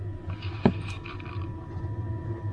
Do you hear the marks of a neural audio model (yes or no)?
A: no